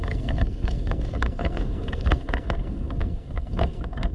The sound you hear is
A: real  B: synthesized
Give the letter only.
B